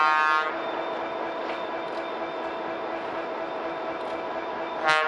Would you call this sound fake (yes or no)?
no